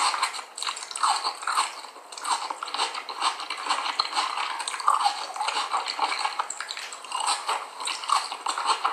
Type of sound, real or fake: real